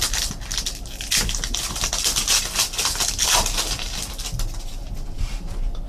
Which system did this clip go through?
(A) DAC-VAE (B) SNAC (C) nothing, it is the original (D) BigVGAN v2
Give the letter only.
C